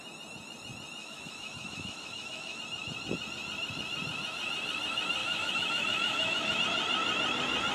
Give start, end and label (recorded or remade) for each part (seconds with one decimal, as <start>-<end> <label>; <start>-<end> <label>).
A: 0.0-1.0 recorded; 1.0-2.6 remade; 2.6-5.2 recorded; 5.2-6.6 remade; 6.6-7.7 recorded